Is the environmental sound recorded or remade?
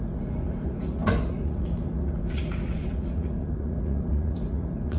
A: remade